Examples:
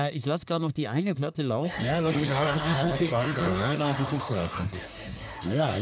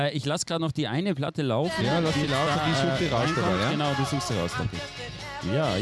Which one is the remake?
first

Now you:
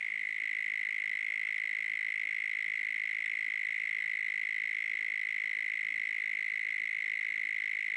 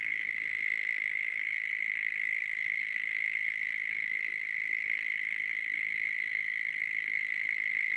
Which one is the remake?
second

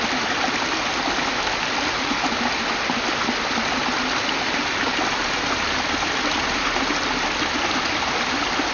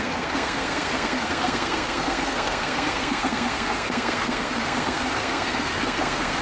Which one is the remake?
second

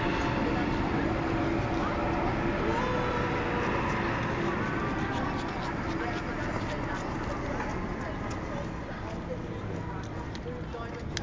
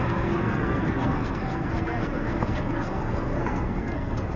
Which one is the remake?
second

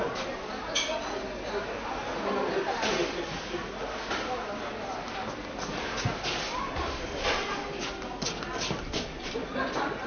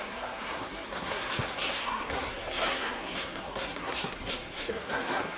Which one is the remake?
second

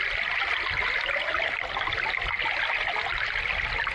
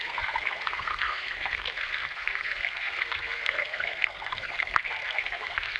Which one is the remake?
second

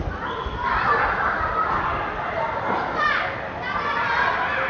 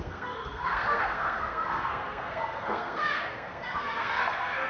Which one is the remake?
second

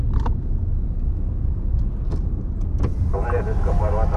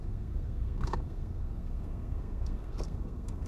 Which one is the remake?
second